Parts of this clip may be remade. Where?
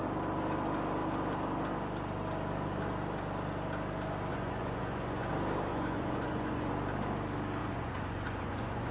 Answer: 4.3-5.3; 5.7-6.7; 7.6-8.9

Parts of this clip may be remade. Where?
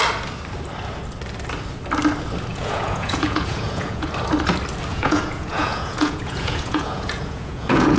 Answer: 2.5-4.1; 4.9-8.0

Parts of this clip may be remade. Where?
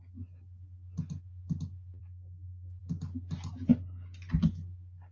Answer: 2.0-2.8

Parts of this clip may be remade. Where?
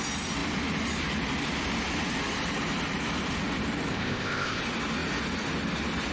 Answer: 3.9-4.6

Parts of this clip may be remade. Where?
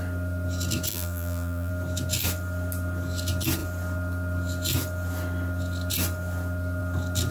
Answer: 0.9-1.7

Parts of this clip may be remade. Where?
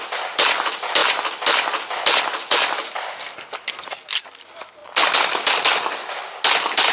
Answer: none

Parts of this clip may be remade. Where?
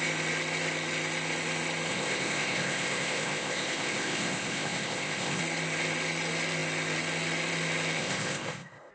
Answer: 1.9-5.4; 8.0-8.9